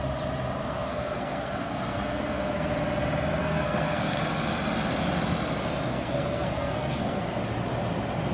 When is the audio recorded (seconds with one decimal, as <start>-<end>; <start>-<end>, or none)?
0.0-0.6; 2.7-3.4; 4.2-5.9; 7.2-8.3